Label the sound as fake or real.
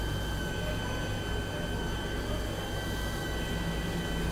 real